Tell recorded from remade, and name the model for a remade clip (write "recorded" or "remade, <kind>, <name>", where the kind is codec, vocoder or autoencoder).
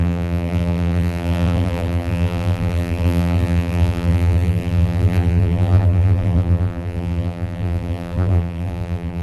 remade, vocoder, BigVGAN v2